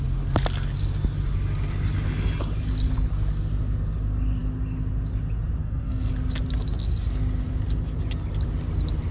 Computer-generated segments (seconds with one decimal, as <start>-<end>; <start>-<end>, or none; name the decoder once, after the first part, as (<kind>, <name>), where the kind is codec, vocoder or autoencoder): 5.6-6.1 (codec, SNAC)